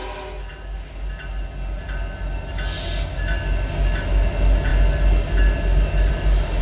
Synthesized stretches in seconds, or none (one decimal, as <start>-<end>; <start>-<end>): none

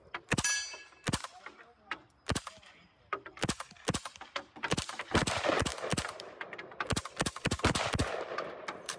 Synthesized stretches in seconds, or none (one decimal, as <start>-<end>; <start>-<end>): none